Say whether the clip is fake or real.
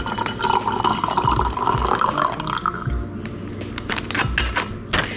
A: real